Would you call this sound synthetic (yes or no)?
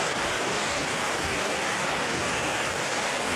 yes